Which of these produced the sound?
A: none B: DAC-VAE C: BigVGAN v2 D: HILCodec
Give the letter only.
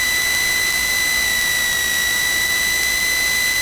A